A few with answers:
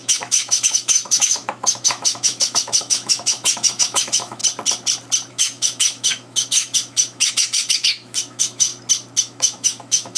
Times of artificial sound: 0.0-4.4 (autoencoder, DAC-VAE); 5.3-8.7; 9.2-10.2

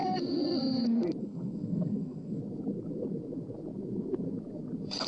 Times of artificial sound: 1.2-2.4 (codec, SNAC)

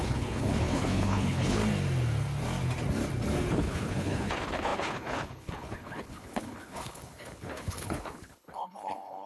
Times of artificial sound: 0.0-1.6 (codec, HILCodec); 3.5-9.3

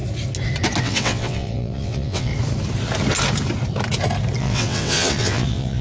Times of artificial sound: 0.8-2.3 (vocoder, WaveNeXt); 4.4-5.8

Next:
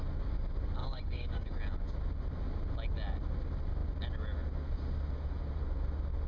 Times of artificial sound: 0.8-1.6 (codec, DAC)

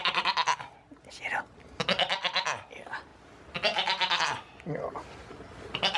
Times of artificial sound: none